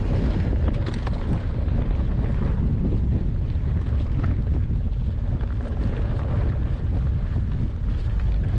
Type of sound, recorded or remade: recorded